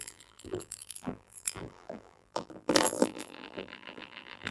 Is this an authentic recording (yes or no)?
no